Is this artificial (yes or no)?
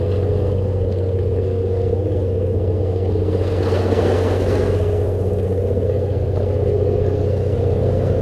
yes